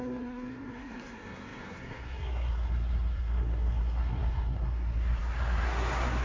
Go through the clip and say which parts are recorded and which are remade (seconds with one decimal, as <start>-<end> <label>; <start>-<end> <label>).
0.0-6.2 remade

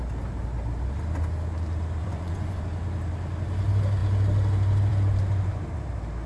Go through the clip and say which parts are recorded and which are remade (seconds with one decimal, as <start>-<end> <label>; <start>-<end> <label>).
0.0-2.0 recorded; 2.0-2.6 remade; 2.6-6.3 recorded

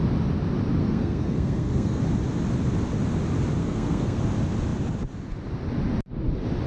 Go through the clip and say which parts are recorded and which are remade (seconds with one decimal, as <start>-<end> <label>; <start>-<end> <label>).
0.0-0.8 recorded; 0.8-2.0 remade; 2.0-3.6 recorded; 3.6-4.2 remade; 4.2-6.7 recorded

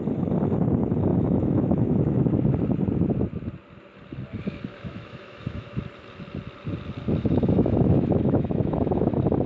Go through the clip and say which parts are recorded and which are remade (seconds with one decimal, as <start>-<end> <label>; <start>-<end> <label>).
0.0-1.1 recorded; 1.1-2.2 remade; 2.2-4.7 recorded; 4.7-5.8 remade; 5.8-7.2 recorded; 7.2-9.1 remade; 9.1-9.5 recorded

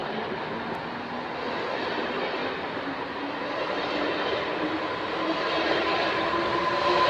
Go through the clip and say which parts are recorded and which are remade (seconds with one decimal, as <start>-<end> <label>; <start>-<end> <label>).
0.0-2.4 recorded; 2.4-3.4 remade; 3.4-7.1 recorded

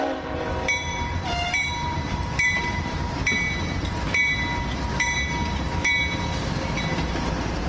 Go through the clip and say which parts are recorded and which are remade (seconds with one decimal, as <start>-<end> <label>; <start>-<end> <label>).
0.0-3.2 remade; 3.2-6.8 recorded; 6.8-7.7 remade

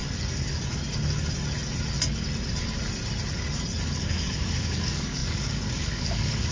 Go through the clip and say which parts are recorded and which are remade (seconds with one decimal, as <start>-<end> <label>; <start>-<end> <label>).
0.0-3.9 recorded; 3.9-6.5 remade